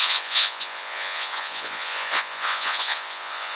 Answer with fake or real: fake